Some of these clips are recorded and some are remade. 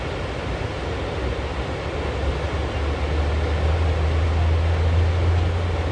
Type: recorded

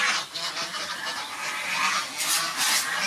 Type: recorded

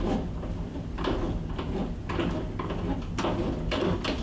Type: recorded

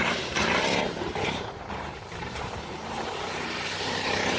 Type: remade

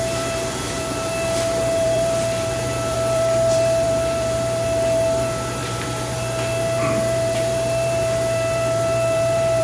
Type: remade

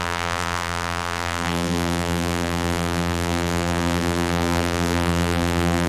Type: remade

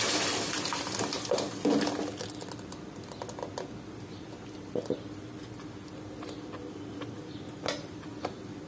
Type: recorded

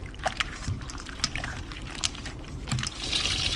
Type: remade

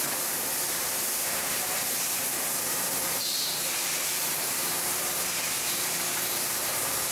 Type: remade